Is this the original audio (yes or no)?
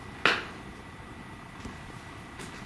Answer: yes